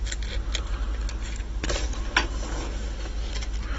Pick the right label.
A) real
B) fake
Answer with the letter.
A